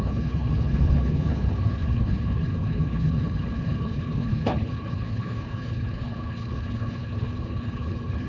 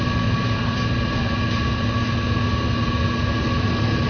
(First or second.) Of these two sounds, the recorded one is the second